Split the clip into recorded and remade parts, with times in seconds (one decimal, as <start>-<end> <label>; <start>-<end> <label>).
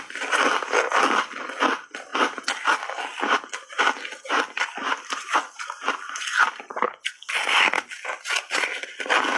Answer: 0.0-9.4 recorded